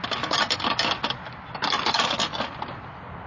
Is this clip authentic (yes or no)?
yes